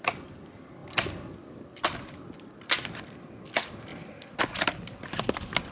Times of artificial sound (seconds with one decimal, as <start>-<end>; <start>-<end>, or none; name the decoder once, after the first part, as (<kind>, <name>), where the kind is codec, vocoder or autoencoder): none